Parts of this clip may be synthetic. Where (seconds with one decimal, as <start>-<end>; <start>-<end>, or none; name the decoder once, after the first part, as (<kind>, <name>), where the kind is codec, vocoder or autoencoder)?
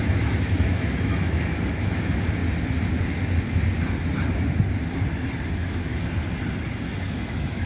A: 0.0-2.4 (autoencoder, DAC-VAE); 5.5-5.9; 7.0-7.7